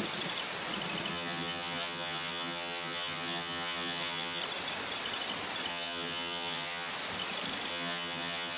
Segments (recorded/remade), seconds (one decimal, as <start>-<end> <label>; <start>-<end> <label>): 0.0-1.1 recorded; 1.1-4.4 remade; 4.4-5.7 recorded; 5.7-6.9 remade; 6.9-7.7 recorded; 7.7-8.6 remade